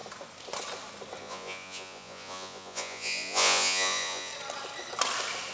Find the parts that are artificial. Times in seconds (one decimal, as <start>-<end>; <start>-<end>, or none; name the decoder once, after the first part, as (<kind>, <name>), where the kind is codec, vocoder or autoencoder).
1.2-4.3 (vocoder, Vocos)